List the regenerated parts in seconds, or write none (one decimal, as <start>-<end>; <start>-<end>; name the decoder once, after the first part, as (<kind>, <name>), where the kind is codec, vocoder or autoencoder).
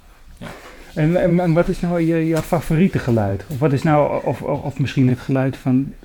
1.3-2.4 (autoencoder, DAC-VAE); 5.1-6.0